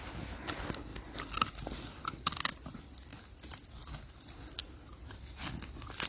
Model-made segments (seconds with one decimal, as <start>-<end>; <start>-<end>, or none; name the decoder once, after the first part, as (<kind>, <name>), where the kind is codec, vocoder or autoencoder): none